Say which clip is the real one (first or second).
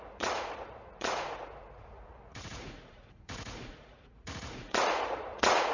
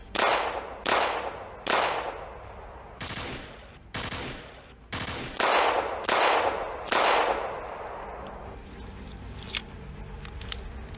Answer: second